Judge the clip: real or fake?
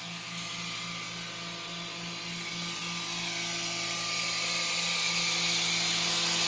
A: real